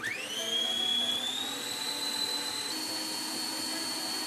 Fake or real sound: real